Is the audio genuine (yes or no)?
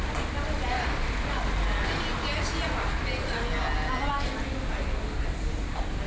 yes